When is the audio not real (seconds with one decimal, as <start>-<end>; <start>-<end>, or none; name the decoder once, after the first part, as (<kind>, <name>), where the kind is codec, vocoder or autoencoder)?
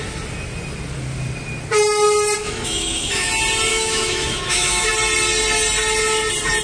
2.4-3.3 (autoencoder, DAC-VAE); 3.7-4.9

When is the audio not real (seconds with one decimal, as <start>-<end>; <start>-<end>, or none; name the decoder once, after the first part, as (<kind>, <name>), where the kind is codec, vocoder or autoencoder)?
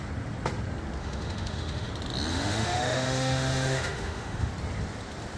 1.0-1.9 (autoencoder, DAC-VAE); 2.3-4.5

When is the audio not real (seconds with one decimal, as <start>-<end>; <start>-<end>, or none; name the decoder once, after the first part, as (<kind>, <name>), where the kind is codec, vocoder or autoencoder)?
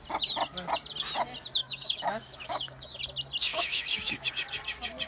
1.6-2.9 (autoencoder, DAC-VAE); 3.5-4.3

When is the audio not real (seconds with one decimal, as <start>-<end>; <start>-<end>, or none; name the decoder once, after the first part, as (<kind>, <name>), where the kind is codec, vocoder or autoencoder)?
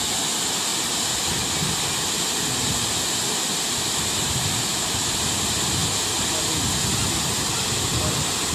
none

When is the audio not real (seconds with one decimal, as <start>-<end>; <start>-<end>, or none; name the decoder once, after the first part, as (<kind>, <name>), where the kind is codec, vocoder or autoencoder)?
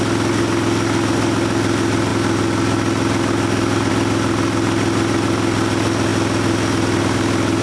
none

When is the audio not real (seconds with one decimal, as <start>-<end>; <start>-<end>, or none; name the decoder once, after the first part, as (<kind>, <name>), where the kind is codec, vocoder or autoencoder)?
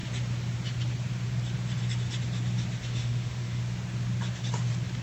3.0-3.6 (autoencoder, DAC-VAE)